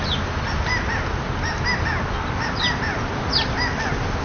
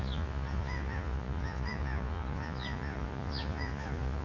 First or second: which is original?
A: first